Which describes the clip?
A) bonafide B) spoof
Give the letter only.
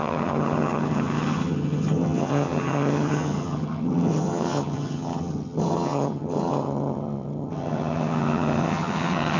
B